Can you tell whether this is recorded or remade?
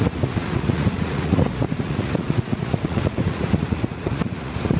remade